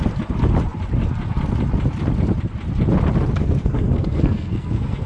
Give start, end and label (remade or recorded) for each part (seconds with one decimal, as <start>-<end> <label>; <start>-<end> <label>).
0.0-3.4 recorded; 3.4-5.1 remade